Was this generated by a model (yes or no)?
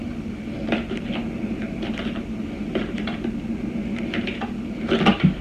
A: no